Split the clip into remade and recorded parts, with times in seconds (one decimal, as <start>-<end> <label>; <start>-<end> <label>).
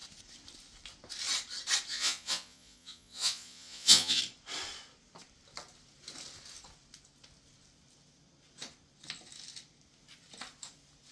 0.0-1.9 recorded; 1.9-4.2 remade; 4.2-11.1 recorded